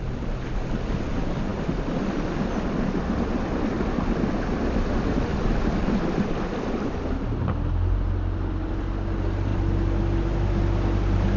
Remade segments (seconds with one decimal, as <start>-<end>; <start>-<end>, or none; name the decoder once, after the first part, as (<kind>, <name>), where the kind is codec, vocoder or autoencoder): 5.3-7.0 (vocoder, BigVGAN v2)